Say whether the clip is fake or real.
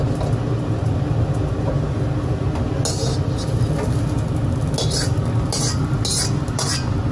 real